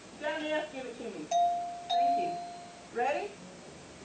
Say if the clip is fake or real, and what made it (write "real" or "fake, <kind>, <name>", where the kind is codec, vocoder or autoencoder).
real